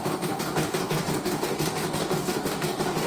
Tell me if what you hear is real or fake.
fake